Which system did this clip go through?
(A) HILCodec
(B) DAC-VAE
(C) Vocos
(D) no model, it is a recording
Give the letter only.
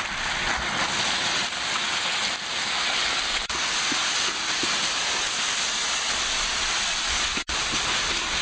D